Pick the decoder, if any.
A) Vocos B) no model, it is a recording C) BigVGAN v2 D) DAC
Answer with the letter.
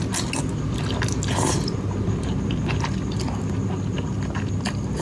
B